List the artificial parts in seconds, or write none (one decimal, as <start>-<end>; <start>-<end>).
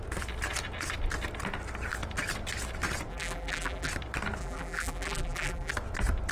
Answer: 3.1-3.9; 4.4-5.7